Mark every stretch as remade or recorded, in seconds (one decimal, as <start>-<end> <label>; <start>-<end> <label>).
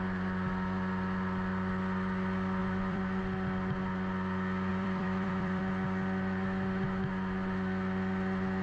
0.0-2.6 recorded; 2.6-3.2 remade; 3.2-4.7 recorded; 4.7-5.6 remade; 5.6-8.6 recorded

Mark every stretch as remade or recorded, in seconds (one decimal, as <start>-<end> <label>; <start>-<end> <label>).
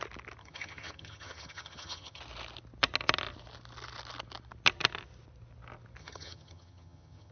0.0-0.4 recorded; 0.4-2.2 remade; 2.2-6.0 recorded; 6.0-7.3 remade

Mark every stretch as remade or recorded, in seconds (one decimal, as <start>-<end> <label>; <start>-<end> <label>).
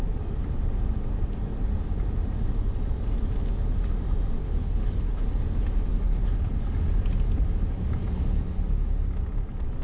0.0-4.4 recorded; 4.4-5.3 remade; 5.3-6.1 recorded; 6.1-6.7 remade; 6.7-9.8 recorded